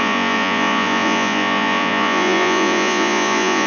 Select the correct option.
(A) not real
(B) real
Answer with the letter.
A